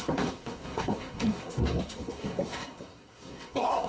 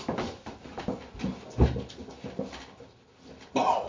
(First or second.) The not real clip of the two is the first